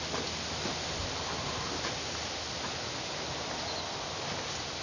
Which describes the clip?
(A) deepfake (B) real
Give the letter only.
B